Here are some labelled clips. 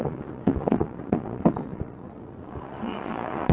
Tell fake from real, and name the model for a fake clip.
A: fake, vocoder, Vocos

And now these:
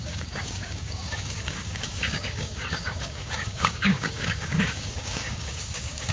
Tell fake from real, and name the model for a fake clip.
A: fake, codec, DAC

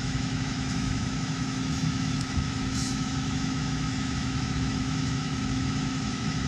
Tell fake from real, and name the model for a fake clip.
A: fake, autoencoder, DAC-VAE